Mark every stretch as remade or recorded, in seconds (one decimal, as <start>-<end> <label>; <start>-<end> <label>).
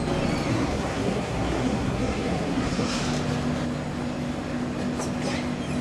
0.0-0.5 recorded; 0.5-3.0 remade; 3.0-5.8 recorded